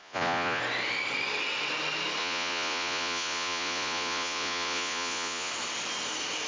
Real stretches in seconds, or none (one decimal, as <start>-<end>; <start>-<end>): 0.6-2.2; 5.5-6.5